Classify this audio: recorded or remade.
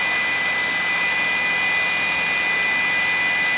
recorded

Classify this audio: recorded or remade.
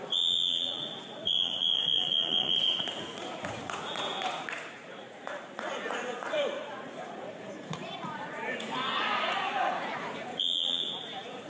remade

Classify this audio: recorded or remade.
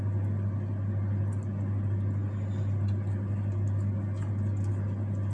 recorded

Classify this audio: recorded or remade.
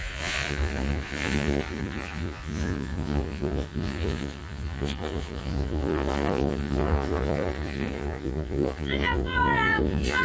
remade